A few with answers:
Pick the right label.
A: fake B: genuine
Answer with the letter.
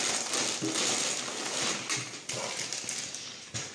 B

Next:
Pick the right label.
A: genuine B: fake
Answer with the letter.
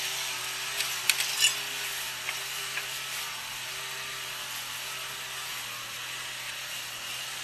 A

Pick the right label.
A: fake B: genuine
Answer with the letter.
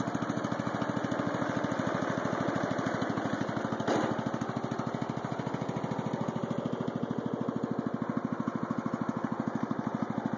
B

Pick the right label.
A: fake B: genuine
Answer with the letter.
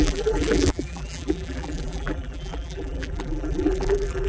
A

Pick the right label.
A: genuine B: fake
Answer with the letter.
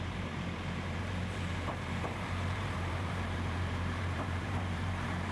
B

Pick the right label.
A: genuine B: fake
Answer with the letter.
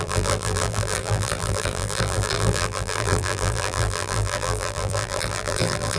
B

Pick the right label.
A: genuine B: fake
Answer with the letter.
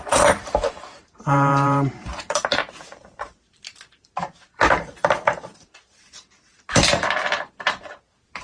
B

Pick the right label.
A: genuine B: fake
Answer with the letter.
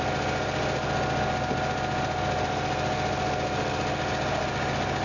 A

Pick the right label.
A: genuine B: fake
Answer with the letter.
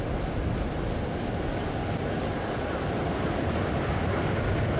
A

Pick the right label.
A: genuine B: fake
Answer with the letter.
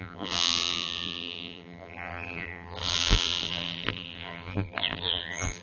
B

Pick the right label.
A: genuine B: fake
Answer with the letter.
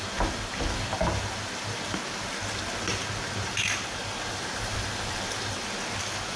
A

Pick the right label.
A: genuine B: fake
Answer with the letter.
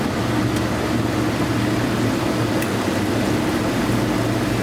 A